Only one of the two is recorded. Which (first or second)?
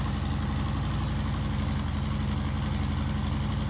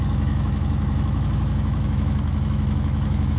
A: first